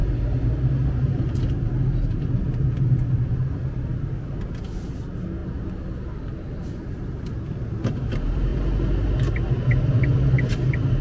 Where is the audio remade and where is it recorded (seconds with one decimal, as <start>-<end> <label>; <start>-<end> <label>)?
0.0-11.0 recorded